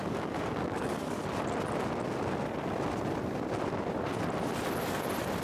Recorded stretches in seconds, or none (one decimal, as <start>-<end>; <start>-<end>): 1.2-5.4